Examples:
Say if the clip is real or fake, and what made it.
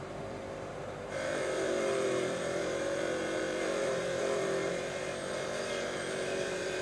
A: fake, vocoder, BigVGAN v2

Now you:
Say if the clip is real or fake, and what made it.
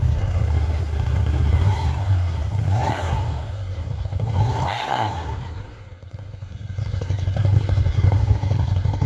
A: fake, codec, SNAC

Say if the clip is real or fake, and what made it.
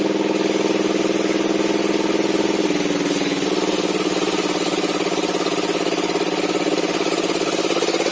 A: real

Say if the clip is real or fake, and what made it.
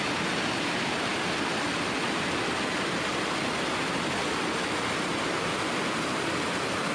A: real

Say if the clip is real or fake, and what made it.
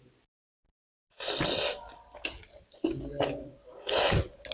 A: real